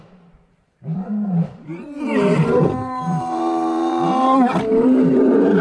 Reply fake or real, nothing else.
fake